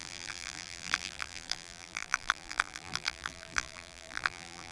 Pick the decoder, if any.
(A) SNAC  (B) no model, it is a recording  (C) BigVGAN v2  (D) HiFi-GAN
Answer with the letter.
C